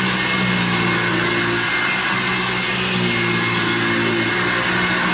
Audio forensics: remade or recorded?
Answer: recorded